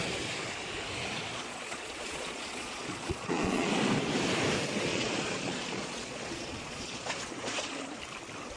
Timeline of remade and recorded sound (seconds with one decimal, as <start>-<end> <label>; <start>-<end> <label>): 0.0-1.3 recorded; 1.3-3.7 remade; 3.7-4.9 recorded; 4.9-8.0 remade; 8.0-8.6 recorded